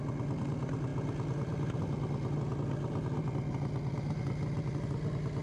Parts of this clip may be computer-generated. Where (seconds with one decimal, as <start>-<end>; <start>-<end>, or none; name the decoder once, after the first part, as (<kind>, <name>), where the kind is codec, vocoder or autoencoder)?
none